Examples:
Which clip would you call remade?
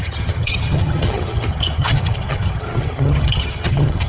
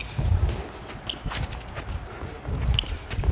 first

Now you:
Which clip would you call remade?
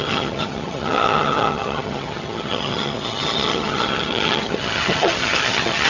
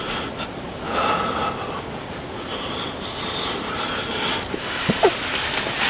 first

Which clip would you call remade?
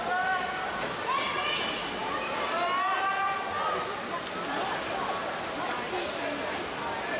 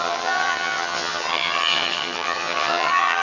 second